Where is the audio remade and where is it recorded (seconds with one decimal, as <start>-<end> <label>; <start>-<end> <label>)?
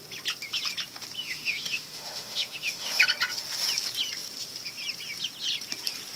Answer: 0.0-1.2 recorded; 1.2-3.0 remade; 3.0-6.2 recorded